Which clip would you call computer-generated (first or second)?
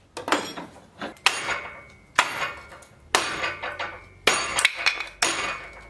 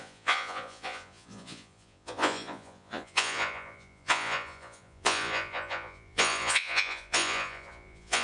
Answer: second